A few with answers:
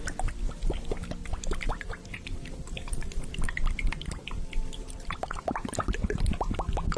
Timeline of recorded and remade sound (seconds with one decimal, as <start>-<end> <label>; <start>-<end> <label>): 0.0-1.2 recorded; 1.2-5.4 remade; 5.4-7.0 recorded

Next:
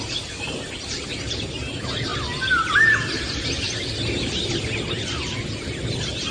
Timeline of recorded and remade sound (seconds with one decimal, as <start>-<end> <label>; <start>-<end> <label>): 0.0-6.3 recorded

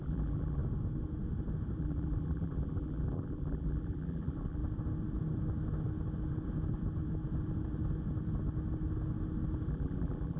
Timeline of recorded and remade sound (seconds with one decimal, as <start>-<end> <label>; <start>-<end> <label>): 0.0-0.6 remade; 0.6-1.8 recorded; 1.8-4.6 remade; 4.6-9.7 recorded; 9.7-10.4 remade

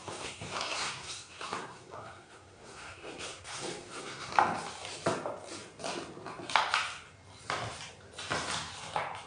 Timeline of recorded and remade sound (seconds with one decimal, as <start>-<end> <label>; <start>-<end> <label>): 0.0-4.3 remade; 4.3-9.3 recorded

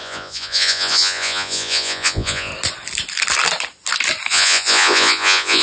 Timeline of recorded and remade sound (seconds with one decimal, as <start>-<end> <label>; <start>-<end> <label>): 0.0-2.5 remade; 2.5-4.3 recorded; 4.3-5.6 remade

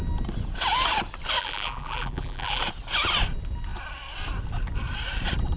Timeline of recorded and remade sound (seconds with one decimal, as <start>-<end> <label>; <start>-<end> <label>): 0.0-1.4 recorded; 1.4-2.6 remade; 2.6-5.6 recorded

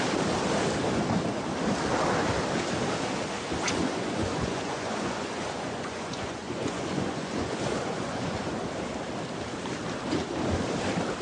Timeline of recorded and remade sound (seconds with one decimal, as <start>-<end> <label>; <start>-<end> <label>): 0.0-3.8 recorded; 3.8-8.6 remade; 8.6-11.2 recorded

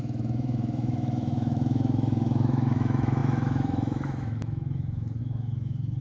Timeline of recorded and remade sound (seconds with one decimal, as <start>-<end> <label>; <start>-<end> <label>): 0.0-6.0 remade